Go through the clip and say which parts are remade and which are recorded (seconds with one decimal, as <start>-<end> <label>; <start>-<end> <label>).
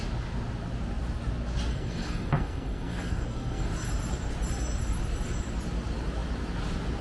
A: 0.0-1.7 recorded; 1.7-3.7 remade; 3.7-7.0 recorded